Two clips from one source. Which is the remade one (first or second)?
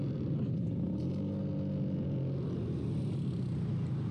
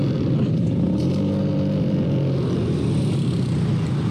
second